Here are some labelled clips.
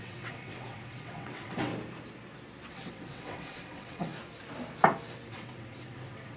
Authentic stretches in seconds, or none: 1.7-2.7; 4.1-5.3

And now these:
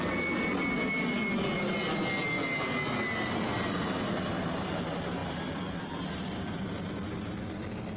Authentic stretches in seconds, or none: 0.0-8.0

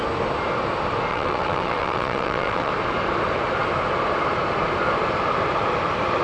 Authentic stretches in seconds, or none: 0.0-1.1; 2.7-6.2

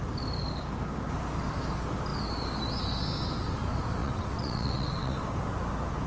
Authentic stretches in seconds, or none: 0.0-4.0; 5.2-6.1

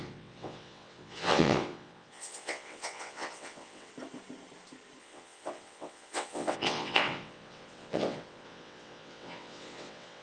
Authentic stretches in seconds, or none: 3.9-5.0

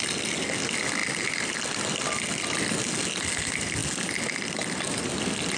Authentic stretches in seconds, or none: 0.0-5.6

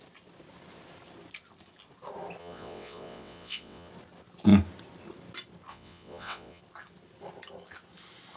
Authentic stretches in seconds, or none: 0.0-2.4; 3.9-5.7; 6.6-8.4

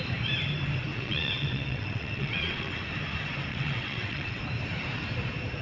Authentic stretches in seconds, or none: 0.0-0.9; 2.8-3.5; 4.4-5.6